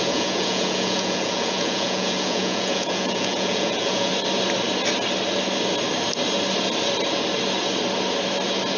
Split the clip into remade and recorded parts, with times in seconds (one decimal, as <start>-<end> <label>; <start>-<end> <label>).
0.0-4.1 remade; 4.1-8.8 recorded